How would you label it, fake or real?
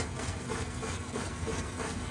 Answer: fake